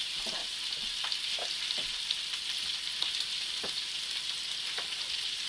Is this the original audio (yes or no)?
no